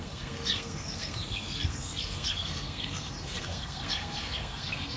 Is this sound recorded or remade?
remade